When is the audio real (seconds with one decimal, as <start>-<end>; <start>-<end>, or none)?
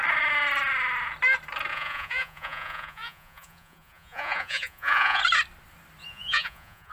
0.0-1.7; 5.2-6.0